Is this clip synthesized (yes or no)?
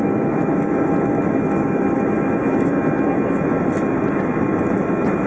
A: no